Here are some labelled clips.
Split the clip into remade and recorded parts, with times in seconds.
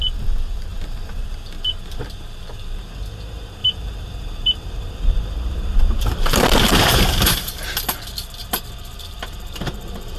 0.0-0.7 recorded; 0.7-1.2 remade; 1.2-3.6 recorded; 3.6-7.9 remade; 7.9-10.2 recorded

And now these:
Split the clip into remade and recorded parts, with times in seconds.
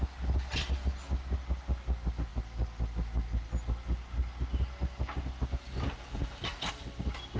0.0-7.4 recorded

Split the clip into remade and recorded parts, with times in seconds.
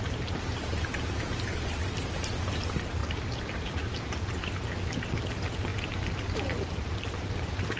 0.0-7.8 recorded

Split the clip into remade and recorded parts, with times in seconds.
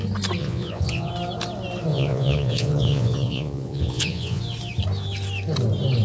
0.0-0.4 recorded; 0.4-1.1 remade; 1.1-1.9 recorded; 1.9-4.4 remade; 4.4-6.0 recorded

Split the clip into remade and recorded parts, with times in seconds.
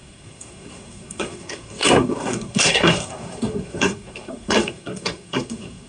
0.0-5.9 remade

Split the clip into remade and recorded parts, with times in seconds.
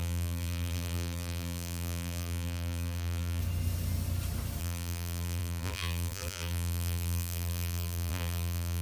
0.0-3.4 remade; 3.4-4.6 recorded; 4.6-8.8 remade